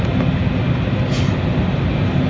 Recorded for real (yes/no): yes